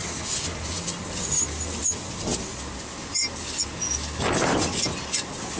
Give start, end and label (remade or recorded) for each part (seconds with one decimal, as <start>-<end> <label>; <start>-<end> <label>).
0.0-1.4 remade; 1.4-2.3 recorded; 2.3-3.0 remade; 3.0-5.6 recorded